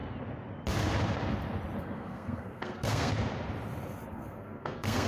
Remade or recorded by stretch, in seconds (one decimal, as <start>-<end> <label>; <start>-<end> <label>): 0.0-1.8 recorded; 1.8-3.1 remade; 3.1-4.1 recorded; 4.1-5.1 remade